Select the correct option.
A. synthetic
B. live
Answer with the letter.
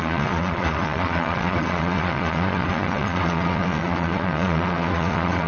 A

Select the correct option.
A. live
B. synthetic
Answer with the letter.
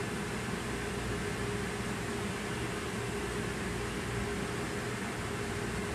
A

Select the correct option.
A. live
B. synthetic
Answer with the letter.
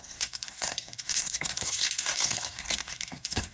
B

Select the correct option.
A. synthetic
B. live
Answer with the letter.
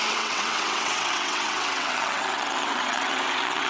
A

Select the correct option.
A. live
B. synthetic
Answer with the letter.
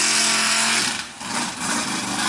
A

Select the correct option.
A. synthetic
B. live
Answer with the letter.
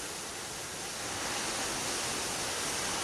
B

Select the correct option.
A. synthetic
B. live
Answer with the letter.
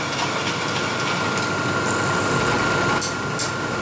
B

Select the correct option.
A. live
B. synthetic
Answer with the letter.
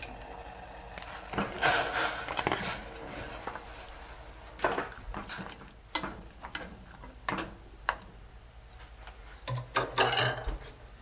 A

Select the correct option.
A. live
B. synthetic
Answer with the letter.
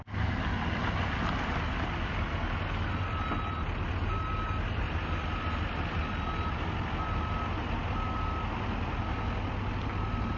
A